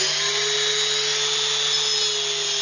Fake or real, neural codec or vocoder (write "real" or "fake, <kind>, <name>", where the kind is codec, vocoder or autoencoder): real